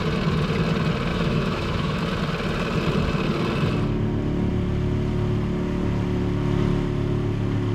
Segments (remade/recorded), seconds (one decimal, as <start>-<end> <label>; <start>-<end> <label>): 0.0-1.1 recorded; 1.1-2.0 remade; 2.0-7.7 recorded